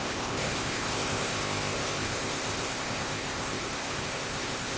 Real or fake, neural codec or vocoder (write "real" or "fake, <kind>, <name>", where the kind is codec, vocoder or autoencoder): fake, codec, ZipCodec